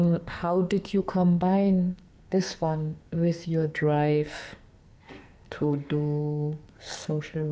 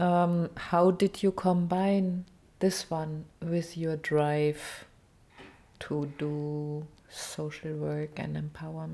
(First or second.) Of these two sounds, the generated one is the first